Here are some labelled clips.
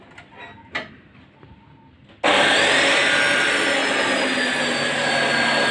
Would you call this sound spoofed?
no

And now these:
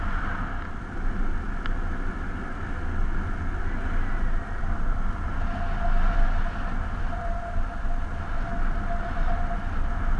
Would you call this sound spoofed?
no